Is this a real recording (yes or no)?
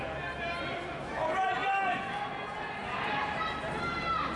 yes